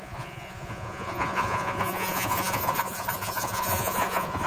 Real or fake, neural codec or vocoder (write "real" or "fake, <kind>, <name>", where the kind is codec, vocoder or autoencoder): fake, vocoder, Vocos